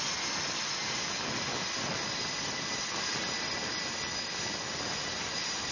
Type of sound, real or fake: real